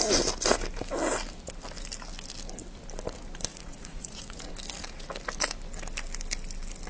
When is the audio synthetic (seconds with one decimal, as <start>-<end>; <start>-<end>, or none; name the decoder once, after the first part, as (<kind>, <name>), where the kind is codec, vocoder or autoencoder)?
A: 3.5-4.5 (vocoder, Vocos)